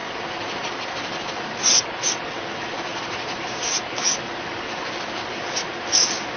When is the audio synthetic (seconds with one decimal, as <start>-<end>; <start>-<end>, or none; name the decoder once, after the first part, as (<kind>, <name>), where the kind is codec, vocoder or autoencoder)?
2.9-3.8 (vocoder, BigVGAN v2)